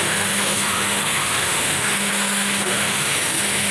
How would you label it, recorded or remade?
remade